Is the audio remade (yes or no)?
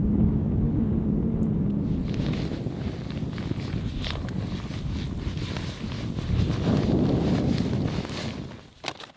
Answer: no